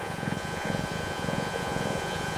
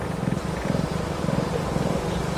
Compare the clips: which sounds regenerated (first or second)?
first